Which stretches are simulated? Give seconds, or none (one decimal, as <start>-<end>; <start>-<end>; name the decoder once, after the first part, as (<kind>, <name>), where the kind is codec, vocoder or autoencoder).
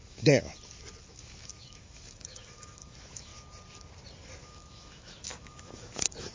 0.0-0.5 (autoencoder, DAC-VAE); 1.1-3.3; 4.4-6.3